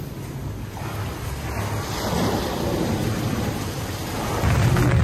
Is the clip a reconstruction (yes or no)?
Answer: no